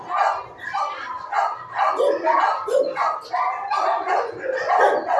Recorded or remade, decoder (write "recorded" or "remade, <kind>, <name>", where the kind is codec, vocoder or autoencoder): recorded